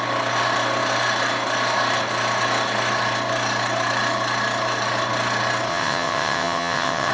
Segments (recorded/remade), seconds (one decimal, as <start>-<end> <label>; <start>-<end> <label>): 0.0-5.7 recorded; 5.7-7.1 remade